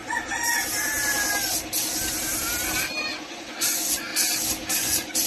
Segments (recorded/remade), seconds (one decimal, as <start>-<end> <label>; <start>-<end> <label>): 0.0-3.0 recorded; 3.0-4.1 remade; 4.1-4.8 recorded; 4.8-5.3 remade